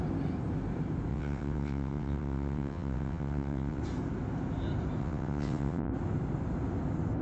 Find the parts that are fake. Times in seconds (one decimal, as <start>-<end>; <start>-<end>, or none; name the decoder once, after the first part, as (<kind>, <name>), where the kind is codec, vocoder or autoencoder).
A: 1.1-3.8 (vocoder, WaveNeXt); 5.0-5.9